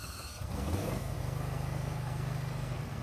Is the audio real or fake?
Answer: fake